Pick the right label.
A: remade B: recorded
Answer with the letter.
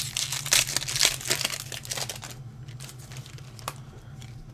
B